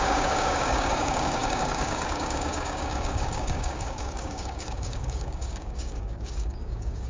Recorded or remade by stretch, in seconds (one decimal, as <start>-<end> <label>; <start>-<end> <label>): 0.0-7.1 remade